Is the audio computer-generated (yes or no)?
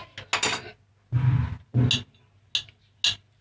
no